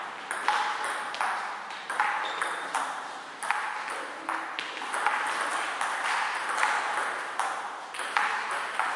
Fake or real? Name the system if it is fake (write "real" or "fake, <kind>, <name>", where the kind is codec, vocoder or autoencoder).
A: real